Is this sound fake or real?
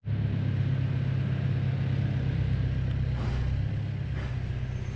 real